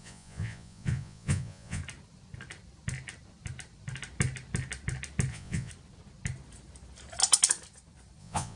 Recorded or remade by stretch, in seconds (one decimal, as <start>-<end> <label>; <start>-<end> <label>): 0.0-1.8 remade; 1.8-5.3 recorded; 5.3-5.7 remade; 5.7-8.2 recorded; 8.2-8.6 remade